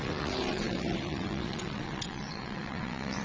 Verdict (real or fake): fake